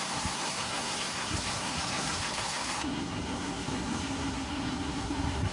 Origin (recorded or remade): remade